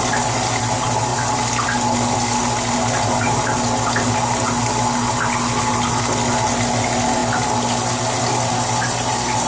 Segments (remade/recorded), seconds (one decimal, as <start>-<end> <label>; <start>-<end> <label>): 0.0-9.5 recorded